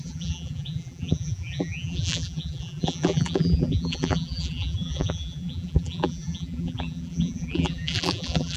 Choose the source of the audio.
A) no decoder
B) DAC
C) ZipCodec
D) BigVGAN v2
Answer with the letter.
D